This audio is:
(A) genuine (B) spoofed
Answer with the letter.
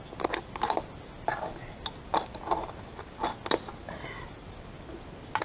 A